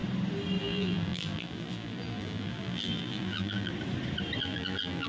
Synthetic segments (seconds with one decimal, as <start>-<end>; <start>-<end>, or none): 0.6-3.7; 4.4-5.1